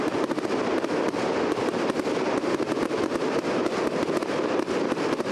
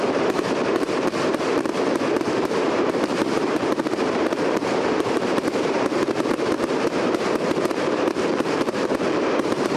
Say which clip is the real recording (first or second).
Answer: first